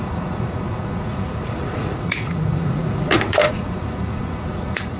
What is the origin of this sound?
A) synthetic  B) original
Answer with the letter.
A